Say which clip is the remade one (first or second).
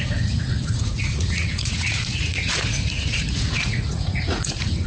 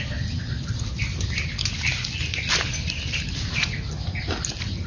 first